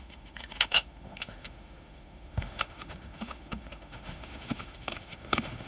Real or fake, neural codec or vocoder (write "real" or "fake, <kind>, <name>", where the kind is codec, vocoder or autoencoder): fake, autoencoder, DAC-VAE